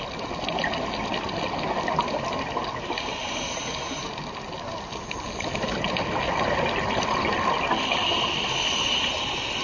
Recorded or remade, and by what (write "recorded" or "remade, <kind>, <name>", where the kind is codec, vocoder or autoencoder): recorded